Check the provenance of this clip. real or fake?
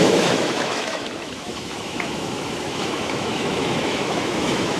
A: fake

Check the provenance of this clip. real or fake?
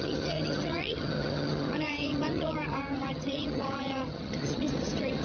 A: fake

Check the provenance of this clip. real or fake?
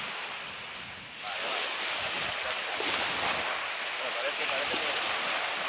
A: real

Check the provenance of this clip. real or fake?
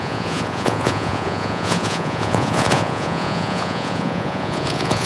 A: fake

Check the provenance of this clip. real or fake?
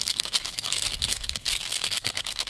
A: fake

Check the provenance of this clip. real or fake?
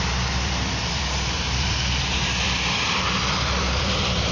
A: fake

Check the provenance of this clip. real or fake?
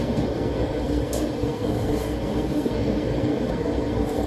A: fake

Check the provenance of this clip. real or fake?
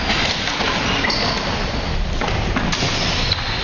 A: real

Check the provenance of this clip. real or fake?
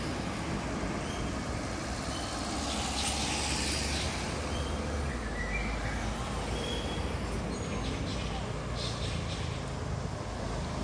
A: real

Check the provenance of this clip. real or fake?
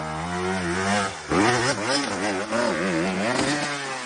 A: real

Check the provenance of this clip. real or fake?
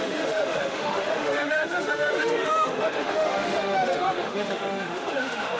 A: fake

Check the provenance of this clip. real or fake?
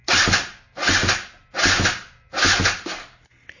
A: real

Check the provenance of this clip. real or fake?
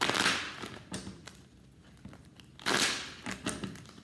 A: real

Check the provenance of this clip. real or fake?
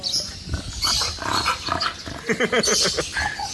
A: real